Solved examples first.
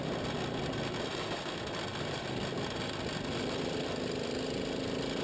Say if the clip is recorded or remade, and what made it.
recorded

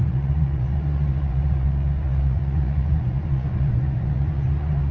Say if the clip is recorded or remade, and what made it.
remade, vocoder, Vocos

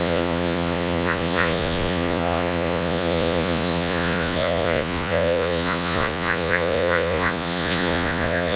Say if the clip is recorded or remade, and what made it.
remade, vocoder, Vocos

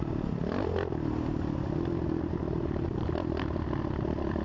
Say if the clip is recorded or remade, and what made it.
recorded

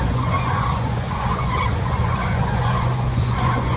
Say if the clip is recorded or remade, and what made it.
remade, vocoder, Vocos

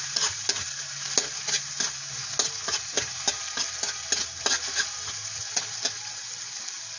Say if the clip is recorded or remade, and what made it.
recorded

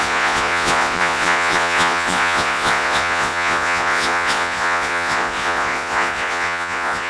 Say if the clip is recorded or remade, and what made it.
remade, vocoder, Vocos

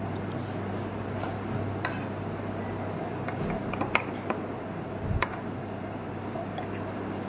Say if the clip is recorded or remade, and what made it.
recorded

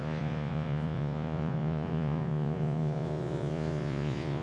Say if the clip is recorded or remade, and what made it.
remade, vocoder, Vocos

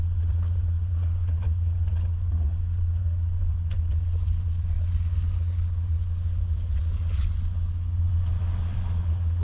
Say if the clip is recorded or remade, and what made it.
remade, vocoder, Vocos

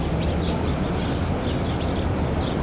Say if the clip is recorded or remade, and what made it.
recorded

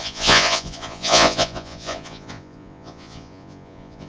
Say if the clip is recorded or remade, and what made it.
remade, vocoder, Vocos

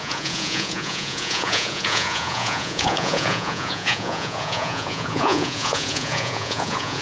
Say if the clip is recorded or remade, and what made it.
remade, vocoder, Vocos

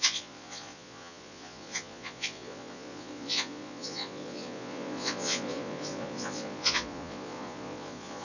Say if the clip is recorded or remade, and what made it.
remade, vocoder, Vocos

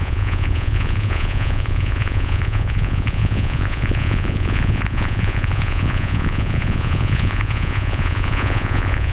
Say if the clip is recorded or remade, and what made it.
remade, vocoder, Vocos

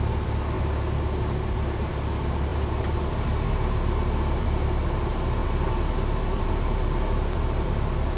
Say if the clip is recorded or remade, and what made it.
recorded